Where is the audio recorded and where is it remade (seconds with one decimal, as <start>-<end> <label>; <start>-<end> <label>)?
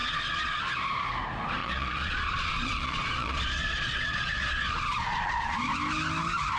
0.0-0.6 remade; 0.6-1.6 recorded; 1.6-5.6 remade; 5.6-6.6 recorded